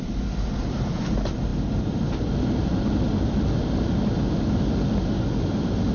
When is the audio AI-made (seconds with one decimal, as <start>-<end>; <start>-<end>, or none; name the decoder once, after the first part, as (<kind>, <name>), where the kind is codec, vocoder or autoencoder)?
none